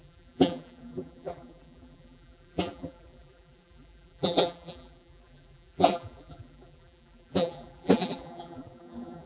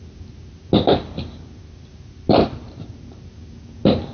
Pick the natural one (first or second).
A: second